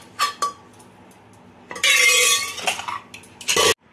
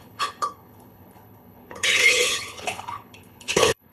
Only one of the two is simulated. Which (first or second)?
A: second